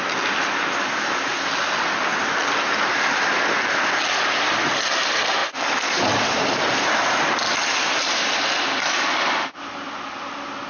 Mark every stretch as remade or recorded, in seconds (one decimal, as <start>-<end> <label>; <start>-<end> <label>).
0.0-10.7 recorded